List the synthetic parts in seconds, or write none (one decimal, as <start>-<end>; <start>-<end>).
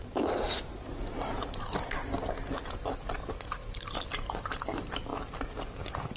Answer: 0.0-0.9; 3.1-5.1